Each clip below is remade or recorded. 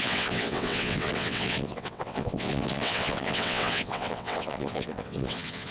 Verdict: remade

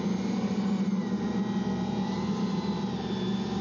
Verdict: recorded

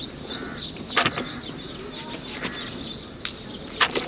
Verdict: recorded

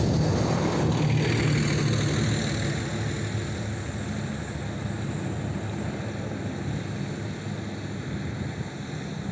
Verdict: recorded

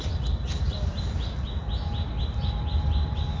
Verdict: recorded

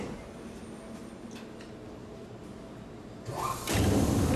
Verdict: recorded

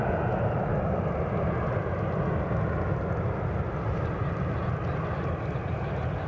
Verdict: recorded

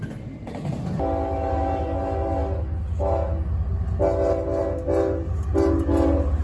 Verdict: recorded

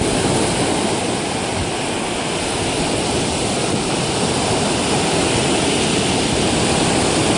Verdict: recorded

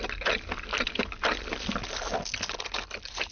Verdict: recorded